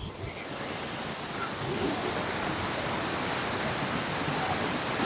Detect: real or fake real